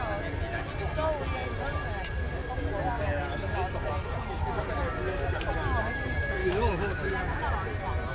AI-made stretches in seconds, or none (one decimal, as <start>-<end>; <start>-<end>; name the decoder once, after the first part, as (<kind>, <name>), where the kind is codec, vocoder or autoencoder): 6.4-7.1 (autoencoder, DAC-VAE)

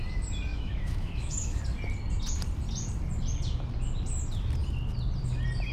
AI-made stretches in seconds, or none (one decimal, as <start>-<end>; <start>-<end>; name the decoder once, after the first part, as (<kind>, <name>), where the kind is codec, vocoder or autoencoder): 0.5-1.6 (autoencoder, DAC-VAE)